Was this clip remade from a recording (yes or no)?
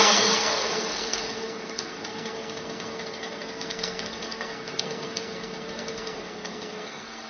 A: yes